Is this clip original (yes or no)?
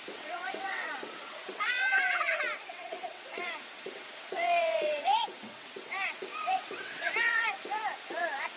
no